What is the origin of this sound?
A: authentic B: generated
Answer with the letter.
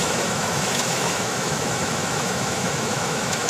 B